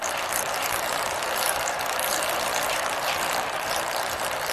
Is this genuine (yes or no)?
no